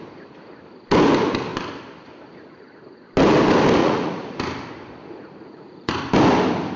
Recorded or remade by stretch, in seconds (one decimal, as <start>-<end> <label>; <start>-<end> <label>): 0.0-3.8 recorded; 3.8-4.4 remade; 4.4-5.0 recorded; 5.0-5.9 remade; 5.9-6.8 recorded